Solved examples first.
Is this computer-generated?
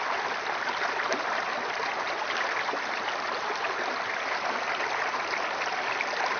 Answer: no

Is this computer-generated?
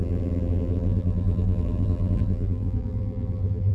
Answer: yes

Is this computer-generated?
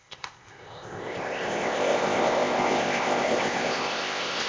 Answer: yes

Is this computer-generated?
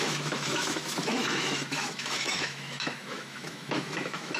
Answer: yes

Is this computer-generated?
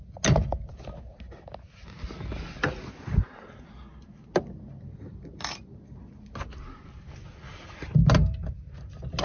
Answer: no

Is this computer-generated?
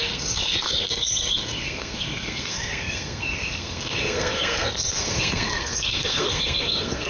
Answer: yes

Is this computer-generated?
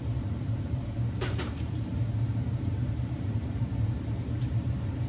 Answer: yes